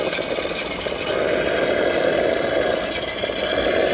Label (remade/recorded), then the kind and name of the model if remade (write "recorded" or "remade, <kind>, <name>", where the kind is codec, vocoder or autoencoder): recorded